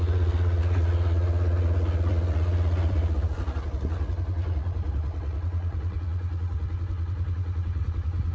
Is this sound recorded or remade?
remade